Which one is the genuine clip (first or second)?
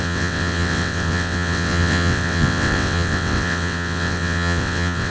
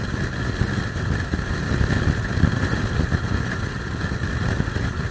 second